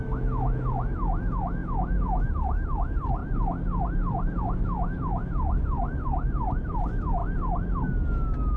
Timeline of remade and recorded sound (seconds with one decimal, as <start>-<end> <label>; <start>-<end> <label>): 0.0-3.2 remade; 3.2-4.4 recorded; 4.4-7.2 remade; 7.2-8.6 recorded